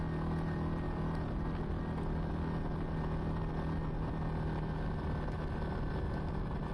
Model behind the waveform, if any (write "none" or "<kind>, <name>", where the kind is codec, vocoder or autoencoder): none